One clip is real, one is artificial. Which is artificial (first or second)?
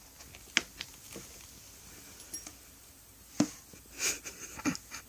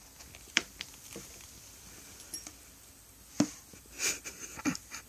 second